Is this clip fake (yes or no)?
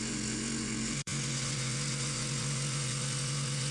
yes